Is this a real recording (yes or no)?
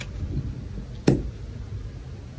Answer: yes